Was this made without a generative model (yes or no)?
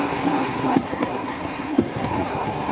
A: no